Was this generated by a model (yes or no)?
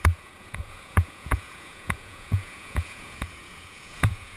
yes